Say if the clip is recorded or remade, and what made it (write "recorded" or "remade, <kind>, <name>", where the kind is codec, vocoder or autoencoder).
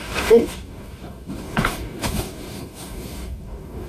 remade, codec, DAC